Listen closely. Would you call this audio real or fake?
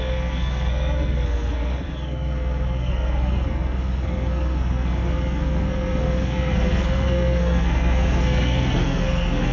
fake